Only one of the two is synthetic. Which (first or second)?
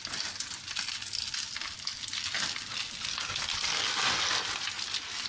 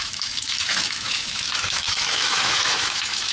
second